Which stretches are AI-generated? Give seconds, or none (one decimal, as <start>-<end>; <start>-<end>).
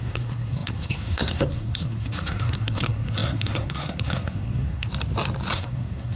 0.0-4.9; 5.5-6.2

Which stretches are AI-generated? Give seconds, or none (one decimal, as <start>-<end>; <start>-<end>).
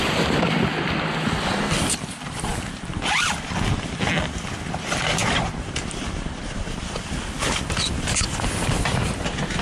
none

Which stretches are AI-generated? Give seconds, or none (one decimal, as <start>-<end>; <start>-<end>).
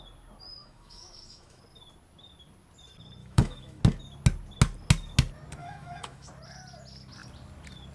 0.6-1.6; 3.2-3.8; 5.6-6.3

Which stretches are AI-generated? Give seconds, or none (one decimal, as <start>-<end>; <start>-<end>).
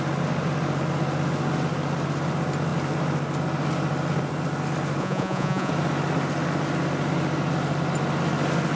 5.0-5.7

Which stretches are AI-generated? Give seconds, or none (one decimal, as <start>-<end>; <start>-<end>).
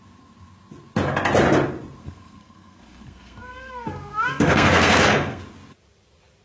2.0-5.4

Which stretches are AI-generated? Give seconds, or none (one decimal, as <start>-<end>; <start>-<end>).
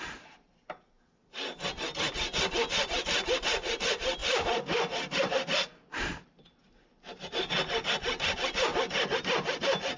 none